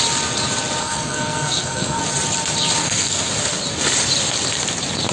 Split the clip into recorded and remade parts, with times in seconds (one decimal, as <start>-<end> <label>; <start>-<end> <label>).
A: 0.0-0.8 recorded; 0.8-2.0 remade; 2.0-2.8 recorded; 2.8-3.3 remade; 3.3-5.1 recorded